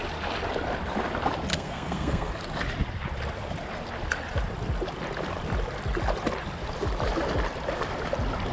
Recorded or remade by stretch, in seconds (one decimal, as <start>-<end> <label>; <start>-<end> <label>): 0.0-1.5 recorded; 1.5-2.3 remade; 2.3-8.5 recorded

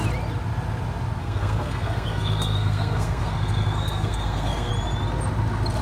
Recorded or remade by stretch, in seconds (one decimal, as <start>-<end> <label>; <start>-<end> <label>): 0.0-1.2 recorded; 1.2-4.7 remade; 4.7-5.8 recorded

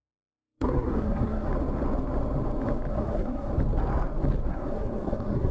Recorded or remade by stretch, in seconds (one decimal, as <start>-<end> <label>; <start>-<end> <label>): 0.0-1.5 remade; 1.5-2.9 recorded; 2.9-3.5 remade; 3.5-4.5 recorded; 4.5-5.5 remade